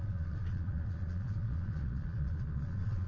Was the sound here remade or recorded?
remade